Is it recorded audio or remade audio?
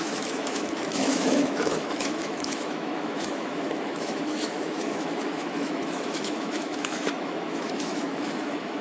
remade